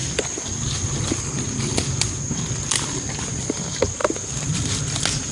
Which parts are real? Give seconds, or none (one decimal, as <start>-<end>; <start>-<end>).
0.0-5.3